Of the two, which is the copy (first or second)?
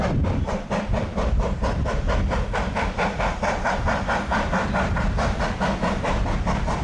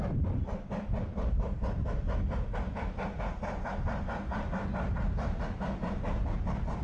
first